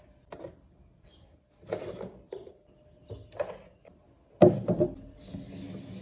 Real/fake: real